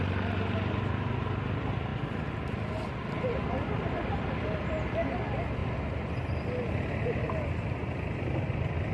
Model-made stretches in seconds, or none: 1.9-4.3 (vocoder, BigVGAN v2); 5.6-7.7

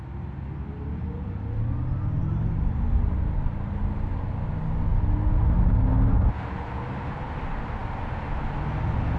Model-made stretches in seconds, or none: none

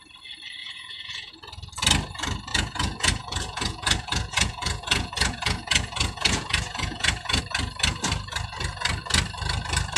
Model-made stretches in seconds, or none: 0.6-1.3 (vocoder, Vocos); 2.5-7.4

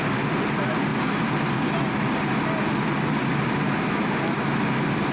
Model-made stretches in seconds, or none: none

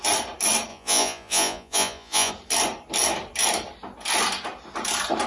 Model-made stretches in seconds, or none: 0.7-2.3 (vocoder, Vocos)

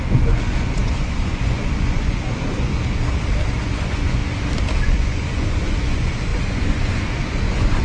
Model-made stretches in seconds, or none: 0.0-2.7 (vocoder, Vocos); 3.6-4.2; 4.8-7.8